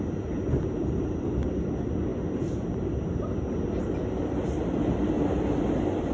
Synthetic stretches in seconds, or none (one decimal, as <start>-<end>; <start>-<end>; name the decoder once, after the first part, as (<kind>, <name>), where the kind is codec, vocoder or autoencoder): none